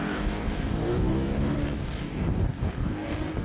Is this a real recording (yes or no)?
no